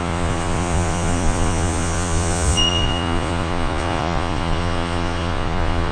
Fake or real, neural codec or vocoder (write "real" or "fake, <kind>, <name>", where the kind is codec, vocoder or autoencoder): fake, vocoder, Vocos